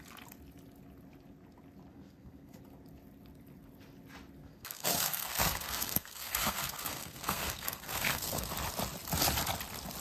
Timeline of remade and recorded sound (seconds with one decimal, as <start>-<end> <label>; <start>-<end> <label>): 0.0-1.9 recorded; 1.9-2.6 remade; 2.6-4.4 recorded; 4.4-8.5 remade; 8.5-10.0 recorded